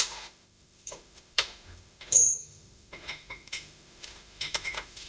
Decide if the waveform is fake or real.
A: fake